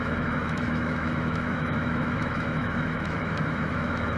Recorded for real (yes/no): no